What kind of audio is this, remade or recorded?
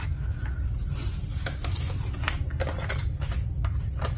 recorded